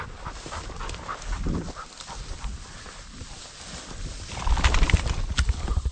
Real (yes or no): yes